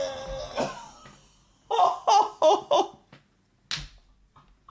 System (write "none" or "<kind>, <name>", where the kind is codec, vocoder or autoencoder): none